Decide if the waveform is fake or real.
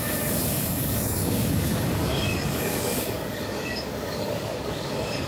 fake